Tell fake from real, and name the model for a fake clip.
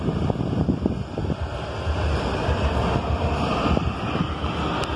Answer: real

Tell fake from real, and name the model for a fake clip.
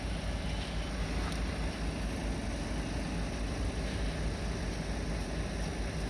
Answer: real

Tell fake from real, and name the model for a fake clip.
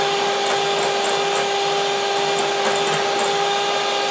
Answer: real